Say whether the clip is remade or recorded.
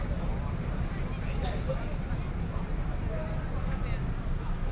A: recorded